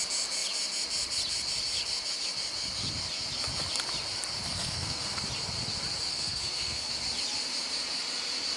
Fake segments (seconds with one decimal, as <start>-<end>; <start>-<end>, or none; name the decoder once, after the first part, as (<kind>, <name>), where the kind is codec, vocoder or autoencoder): 4.5-5.2 (codec, SNAC); 6.1-6.9